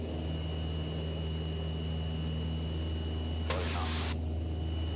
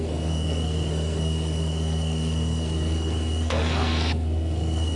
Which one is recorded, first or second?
first